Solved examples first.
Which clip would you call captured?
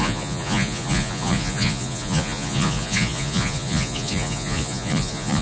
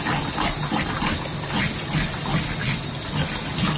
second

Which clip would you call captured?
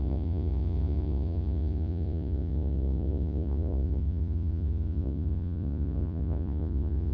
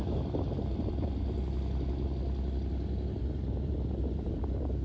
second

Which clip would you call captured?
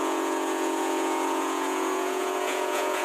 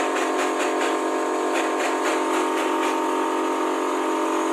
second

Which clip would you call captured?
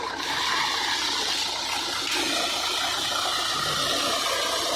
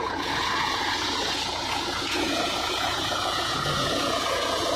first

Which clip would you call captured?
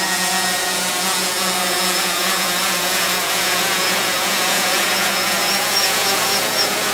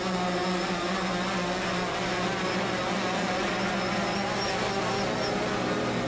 second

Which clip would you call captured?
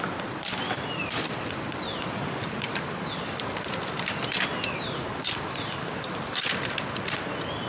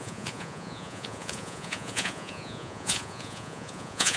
first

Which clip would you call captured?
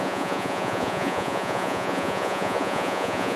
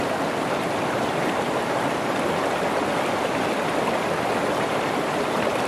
second